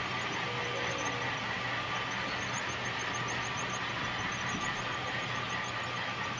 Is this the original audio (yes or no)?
yes